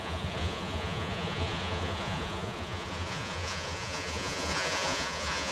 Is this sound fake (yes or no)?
yes